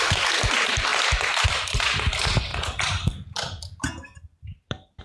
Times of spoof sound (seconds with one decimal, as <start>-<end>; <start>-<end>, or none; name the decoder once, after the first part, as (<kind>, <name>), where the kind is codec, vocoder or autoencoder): 0.9-1.5 (vocoder, BigVGAN v2); 2.5-5.0